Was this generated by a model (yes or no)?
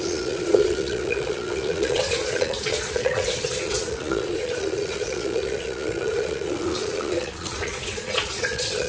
yes